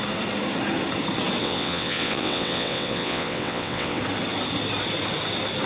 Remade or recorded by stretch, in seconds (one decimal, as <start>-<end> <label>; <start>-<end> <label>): 0.0-1.4 recorded; 1.4-4.0 remade; 4.0-5.7 recorded